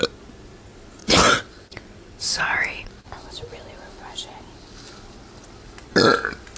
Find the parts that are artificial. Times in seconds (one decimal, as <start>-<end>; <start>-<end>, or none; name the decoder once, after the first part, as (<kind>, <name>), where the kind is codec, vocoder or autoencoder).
1.0-2.9 (vocoder, WaveNeXt)